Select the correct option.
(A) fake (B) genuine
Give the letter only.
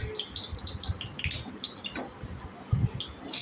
B